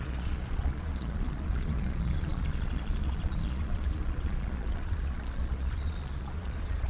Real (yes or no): no